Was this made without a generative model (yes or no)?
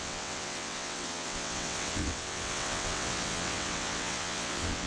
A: no